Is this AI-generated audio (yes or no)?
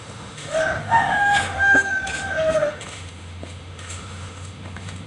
yes